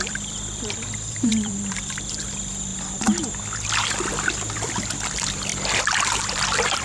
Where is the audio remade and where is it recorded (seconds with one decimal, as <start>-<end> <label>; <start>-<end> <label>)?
0.0-2.7 remade; 2.7-4.1 recorded; 4.1-5.5 remade; 5.5-6.3 recorded; 6.3-6.8 remade